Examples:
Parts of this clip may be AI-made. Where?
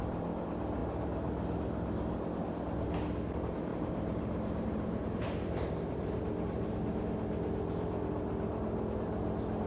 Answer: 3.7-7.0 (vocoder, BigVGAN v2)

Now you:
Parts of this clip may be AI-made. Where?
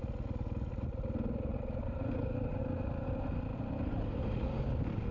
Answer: 1.5-2.6 (vocoder, BigVGAN v2)